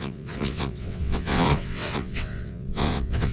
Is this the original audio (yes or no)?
no